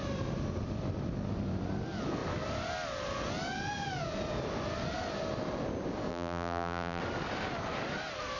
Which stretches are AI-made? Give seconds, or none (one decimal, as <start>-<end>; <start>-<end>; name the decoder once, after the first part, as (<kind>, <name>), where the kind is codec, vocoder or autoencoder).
6.1-7.0 (vocoder, BigVGAN v2)